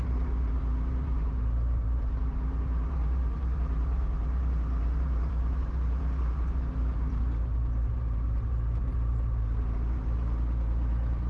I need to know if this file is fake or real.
fake